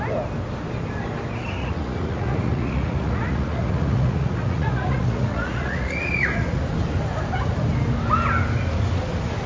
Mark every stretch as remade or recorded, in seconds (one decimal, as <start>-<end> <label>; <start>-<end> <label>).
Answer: 0.0-1.6 recorded; 1.6-6.6 remade; 6.6-9.5 recorded

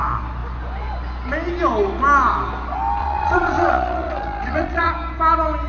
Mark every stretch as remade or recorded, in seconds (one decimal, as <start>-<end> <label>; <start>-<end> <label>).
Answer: 0.0-3.0 recorded; 3.0-4.9 remade; 4.9-5.7 recorded

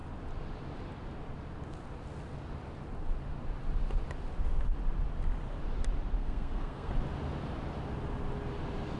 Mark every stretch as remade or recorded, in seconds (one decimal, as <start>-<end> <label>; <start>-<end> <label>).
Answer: 0.0-6.2 recorded; 6.2-6.9 remade; 6.9-9.0 recorded

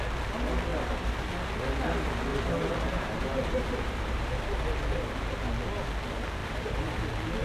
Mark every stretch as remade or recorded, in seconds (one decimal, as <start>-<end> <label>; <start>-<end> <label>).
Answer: 0.0-0.7 recorded; 0.7-1.3 remade; 1.3-2.3 recorded; 2.3-4.3 remade; 4.3-6.4 recorded; 6.4-7.0 remade; 7.0-7.4 recorded

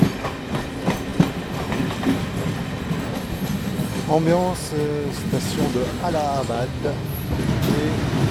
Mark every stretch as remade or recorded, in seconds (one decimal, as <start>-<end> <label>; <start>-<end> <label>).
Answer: 0.0-8.3 recorded

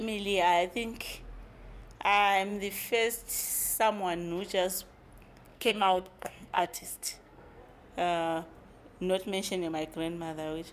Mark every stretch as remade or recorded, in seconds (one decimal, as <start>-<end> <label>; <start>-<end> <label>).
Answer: 0.0-5.5 recorded; 5.5-7.6 remade; 7.6-10.7 recorded